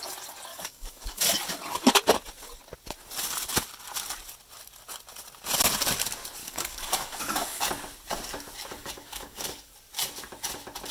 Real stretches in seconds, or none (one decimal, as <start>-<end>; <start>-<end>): 0.0-0.5; 1.2-6.4; 7.7-8.8; 9.7-10.9